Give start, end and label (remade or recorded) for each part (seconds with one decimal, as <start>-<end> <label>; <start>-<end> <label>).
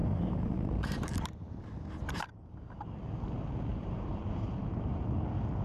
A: 0.0-2.7 remade; 2.7-3.7 recorded; 3.7-5.1 remade; 5.1-5.6 recorded